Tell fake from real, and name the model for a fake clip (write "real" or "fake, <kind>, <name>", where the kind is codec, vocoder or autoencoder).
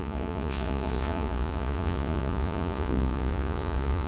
fake, vocoder, Vocos